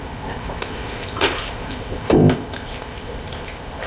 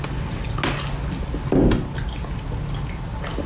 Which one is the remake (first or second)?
first